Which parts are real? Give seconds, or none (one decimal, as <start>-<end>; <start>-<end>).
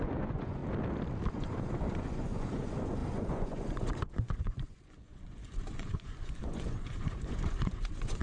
0.6-1.3